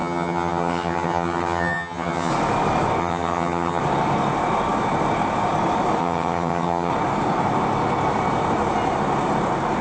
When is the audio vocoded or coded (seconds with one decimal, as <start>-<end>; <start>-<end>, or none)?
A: 0.0-2.3; 3.0-3.8; 6.0-6.9